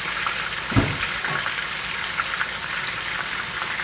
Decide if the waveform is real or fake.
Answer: real